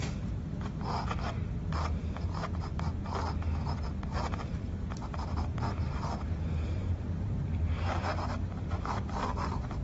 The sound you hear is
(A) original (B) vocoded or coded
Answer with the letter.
A